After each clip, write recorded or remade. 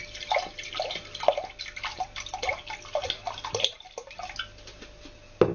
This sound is recorded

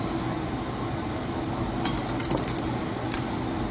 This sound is recorded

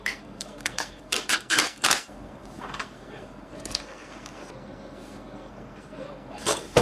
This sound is remade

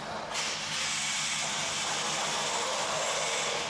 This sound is recorded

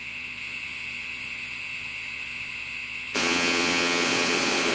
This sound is remade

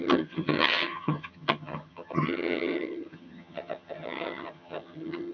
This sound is remade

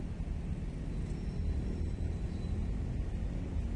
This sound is recorded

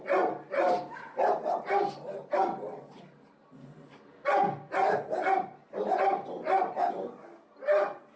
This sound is recorded